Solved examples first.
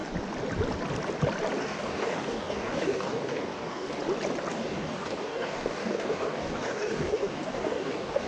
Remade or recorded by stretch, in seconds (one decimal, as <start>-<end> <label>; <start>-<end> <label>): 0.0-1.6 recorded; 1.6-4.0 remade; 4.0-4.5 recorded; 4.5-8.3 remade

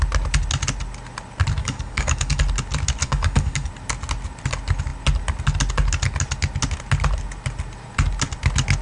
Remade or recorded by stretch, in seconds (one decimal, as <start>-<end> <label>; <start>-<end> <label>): 0.0-1.6 recorded; 1.6-2.4 remade; 2.4-3.0 recorded; 3.0-3.7 remade; 3.7-8.8 recorded

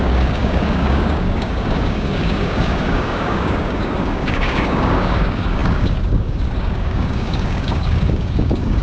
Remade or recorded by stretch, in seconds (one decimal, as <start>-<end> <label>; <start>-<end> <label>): 0.0-8.8 remade

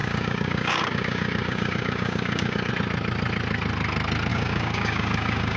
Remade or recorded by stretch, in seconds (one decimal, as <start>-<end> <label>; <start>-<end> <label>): 0.0-2.7 remade; 2.7-4.3 recorded; 4.3-5.6 remade

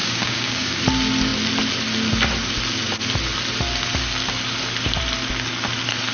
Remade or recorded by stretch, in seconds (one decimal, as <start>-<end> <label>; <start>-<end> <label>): 0.0-0.8 remade; 0.8-6.1 recorded

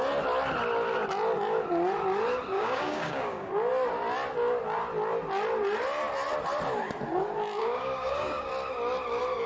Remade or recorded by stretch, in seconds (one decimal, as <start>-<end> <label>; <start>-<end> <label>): 0.0-2.5 recorded; 2.5-3.5 remade; 3.5-7.6 recorded; 7.6-8.5 remade; 8.5-9.5 recorded

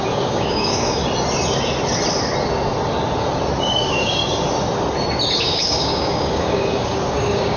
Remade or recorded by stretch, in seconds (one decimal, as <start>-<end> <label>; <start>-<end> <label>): 0.0-1.0 remade; 1.0-3.6 recorded; 3.6-4.2 remade; 4.2-5.4 recorded; 5.4-7.6 remade

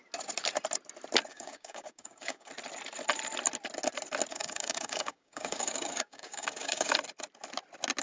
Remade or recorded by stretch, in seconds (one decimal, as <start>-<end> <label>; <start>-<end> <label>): 0.0-1.3 recorded; 1.3-2.5 remade; 2.5-4.3 recorded; 4.3-6.9 remade; 6.9-8.0 recorded